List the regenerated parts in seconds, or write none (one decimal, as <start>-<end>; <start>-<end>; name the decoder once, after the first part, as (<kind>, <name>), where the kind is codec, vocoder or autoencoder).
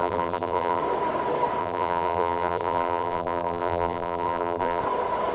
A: 0.0-0.8 (vocoder, BigVGAN v2); 1.6-4.8